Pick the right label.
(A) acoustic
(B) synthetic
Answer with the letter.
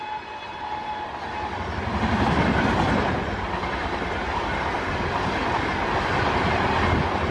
A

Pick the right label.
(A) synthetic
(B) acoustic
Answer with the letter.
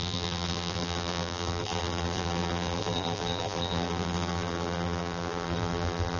A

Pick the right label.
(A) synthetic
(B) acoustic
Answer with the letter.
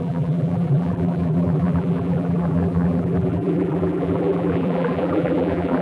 A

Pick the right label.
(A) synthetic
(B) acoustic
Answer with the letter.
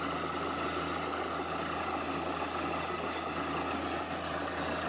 B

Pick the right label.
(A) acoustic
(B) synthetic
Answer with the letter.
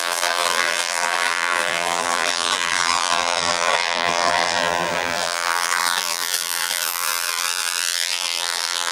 B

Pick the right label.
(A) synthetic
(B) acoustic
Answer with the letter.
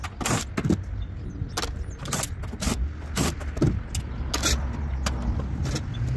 B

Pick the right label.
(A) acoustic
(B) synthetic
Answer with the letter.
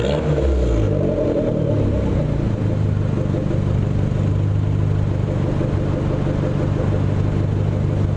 A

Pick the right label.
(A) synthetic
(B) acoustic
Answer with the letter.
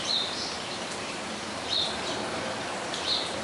A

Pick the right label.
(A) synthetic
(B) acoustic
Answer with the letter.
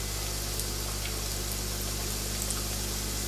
B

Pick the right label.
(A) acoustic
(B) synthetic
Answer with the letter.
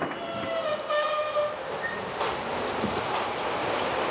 A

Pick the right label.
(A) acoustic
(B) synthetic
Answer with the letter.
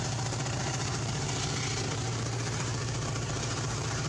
B